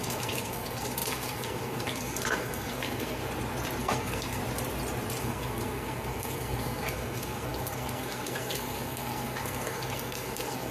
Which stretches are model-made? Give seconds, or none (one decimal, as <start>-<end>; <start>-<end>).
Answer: 0.0-3.2; 3.8-4.4; 5.2-10.7